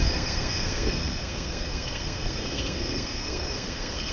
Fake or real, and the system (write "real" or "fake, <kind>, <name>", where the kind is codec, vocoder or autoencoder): fake, codec, SNAC